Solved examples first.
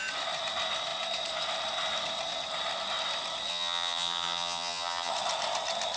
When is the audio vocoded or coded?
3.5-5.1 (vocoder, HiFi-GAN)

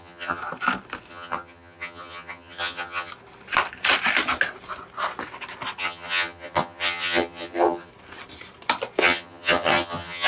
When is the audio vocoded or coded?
0.0-0.4 (vocoder, HiFi-GAN); 1.1-3.1; 5.8-7.9; 9.0-10.3

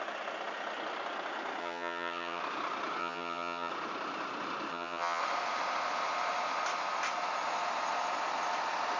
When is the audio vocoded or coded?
1.6-2.4 (vocoder, HiFi-GAN); 3.0-3.7; 4.7-5.2

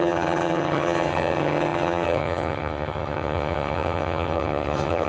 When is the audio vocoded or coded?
0.0-5.1 (vocoder, HiFi-GAN)

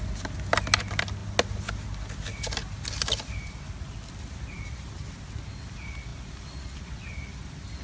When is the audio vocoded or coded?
none

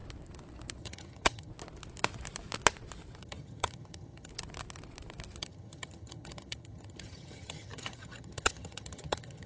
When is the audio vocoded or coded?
0.8-1.5 (vocoder, HiFi-GAN); 3.2-4.3; 5.4-9.5

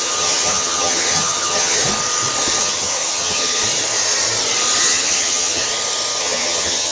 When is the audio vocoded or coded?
0.0-1.8 (vocoder, HiFi-GAN); 2.6-3.6; 4.8-5.6; 6.2-6.9

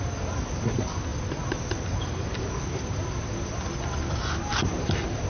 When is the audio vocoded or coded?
none